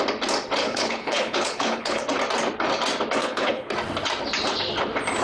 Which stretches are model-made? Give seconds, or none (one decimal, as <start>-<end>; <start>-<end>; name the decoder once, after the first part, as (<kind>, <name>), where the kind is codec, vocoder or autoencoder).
0.6-2.0 (codec, HILCodec); 3.2-3.7